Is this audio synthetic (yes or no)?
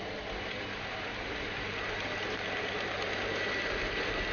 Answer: no